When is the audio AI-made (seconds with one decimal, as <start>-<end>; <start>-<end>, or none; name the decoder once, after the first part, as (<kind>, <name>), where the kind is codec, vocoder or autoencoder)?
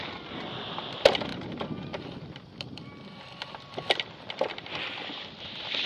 1.3-4.8 (vocoder, BigVGAN v2)